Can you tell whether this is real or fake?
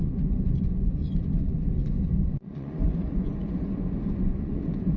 fake